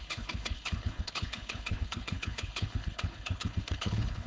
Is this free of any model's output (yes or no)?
no